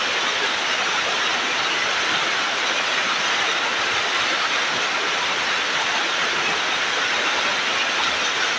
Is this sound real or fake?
real